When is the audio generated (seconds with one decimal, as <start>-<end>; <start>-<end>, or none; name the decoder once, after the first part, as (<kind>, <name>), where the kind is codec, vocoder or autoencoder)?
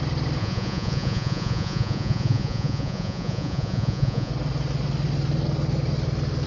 0.4-4.3 (vocoder, Vocos)